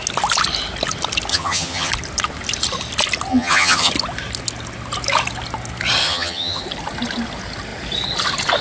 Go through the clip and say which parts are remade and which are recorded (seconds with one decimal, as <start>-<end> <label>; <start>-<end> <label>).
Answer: 0.0-1.3 recorded; 1.3-1.9 remade; 1.9-3.3 recorded; 3.3-3.9 remade; 3.9-6.0 recorded; 6.0-6.6 remade; 6.6-8.6 recorded